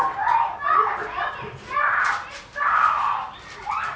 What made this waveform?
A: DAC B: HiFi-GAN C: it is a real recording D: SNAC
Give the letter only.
C